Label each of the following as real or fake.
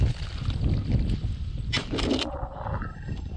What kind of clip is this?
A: fake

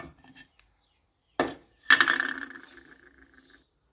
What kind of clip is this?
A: real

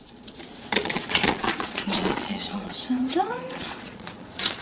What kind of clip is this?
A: fake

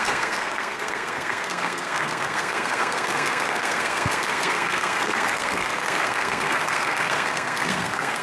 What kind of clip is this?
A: fake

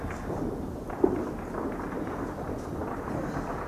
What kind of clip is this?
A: real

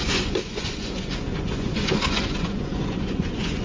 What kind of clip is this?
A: fake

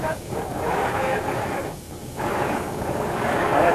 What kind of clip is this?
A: fake